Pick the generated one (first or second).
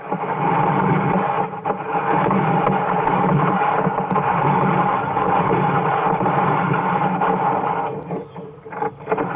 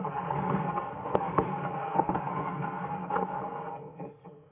second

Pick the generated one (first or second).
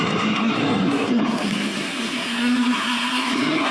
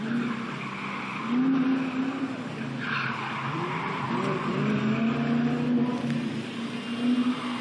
first